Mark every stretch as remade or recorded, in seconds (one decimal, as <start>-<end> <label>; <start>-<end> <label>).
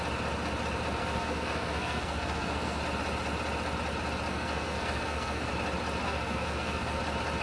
0.0-1.0 recorded; 1.0-2.8 remade; 2.8-4.3 recorded; 4.3-5.5 remade; 5.5-6.0 recorded; 6.0-7.0 remade; 7.0-7.4 recorded